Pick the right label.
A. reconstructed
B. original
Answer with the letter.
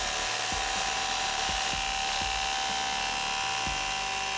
B